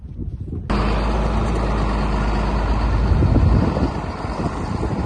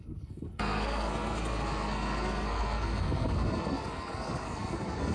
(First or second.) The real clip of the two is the first